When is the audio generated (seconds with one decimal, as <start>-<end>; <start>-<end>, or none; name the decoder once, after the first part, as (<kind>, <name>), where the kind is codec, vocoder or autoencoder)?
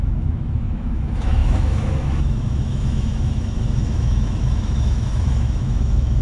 0.0-6.2 (autoencoder, DAC-VAE)